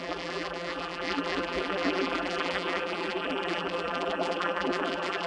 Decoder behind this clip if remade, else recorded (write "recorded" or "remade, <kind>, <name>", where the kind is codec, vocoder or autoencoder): remade, vocoder, BigVGAN v2